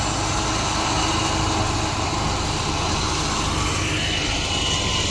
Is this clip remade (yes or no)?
no